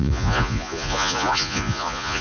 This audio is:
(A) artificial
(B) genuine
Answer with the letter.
A